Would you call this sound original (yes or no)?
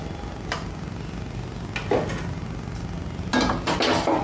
yes